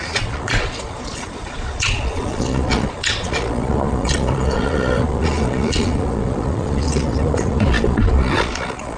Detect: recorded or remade remade